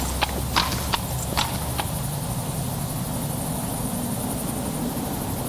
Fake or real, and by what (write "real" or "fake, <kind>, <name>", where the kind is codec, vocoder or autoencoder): real